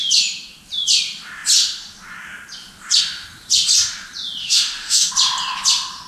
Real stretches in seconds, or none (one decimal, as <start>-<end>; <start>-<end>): 0.0-4.4; 5.1-6.1

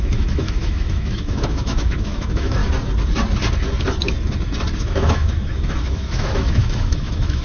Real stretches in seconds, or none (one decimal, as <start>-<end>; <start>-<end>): 2.6-4.8

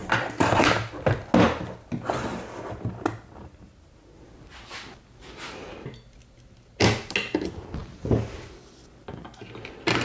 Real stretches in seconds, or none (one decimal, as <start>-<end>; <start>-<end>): 0.0-10.0

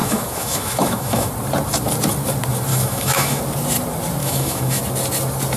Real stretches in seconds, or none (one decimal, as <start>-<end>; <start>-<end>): 1.3-2.7; 3.4-4.2; 4.8-5.6